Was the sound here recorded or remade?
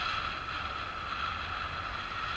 recorded